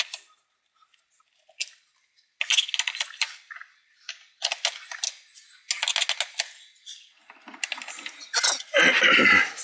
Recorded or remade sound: recorded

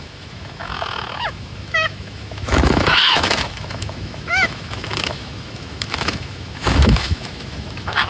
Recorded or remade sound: remade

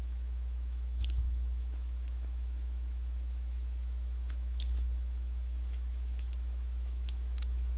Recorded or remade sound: remade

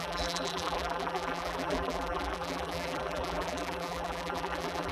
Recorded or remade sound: remade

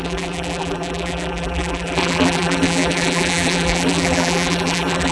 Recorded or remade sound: remade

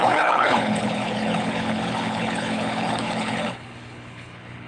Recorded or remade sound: remade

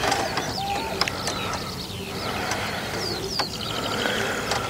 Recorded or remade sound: recorded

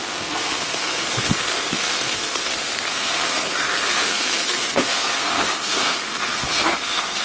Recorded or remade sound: remade